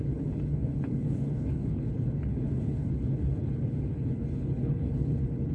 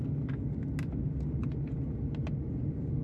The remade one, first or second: first